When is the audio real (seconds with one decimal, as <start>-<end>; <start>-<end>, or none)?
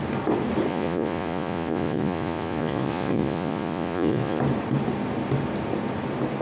0.0-0.7; 4.4-6.4